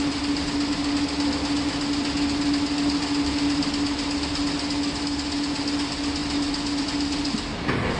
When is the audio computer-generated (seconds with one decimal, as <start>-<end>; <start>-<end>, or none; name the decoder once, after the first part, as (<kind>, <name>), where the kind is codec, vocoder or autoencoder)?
none